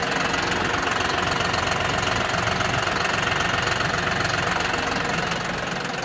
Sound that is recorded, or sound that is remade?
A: recorded